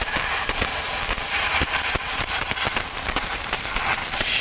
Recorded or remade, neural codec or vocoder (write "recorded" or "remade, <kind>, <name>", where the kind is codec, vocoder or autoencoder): remade, vocoder, BigVGAN v2